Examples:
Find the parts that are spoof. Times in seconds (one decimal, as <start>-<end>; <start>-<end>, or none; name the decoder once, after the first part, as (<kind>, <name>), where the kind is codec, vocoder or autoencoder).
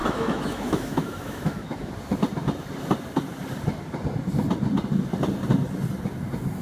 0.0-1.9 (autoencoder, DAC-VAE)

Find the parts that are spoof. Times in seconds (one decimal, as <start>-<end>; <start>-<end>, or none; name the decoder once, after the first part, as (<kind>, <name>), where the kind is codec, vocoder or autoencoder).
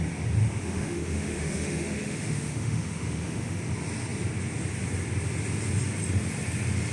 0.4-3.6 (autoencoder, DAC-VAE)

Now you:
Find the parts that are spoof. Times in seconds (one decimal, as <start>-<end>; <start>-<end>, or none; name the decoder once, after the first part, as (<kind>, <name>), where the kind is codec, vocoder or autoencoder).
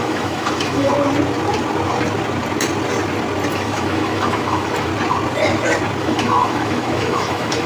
0.0-0.9 (autoencoder, DAC-VAE); 3.5-4.9; 6.0-7.7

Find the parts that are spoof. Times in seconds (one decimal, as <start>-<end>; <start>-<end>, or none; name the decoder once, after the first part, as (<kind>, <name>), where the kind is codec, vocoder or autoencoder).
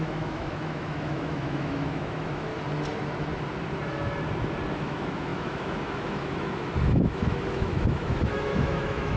0.0-2.5 (autoencoder, DAC-VAE); 4.7-9.2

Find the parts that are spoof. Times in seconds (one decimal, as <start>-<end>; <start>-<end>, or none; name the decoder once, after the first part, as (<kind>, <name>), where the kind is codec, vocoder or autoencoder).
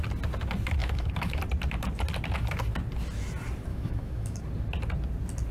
0.8-1.4 (autoencoder, DAC-VAE); 3.7-4.4